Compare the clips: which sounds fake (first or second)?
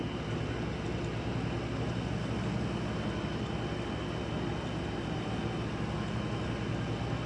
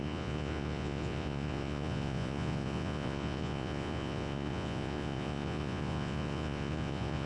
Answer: second